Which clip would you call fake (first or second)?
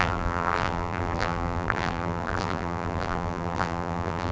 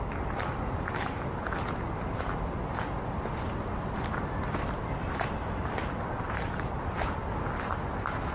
first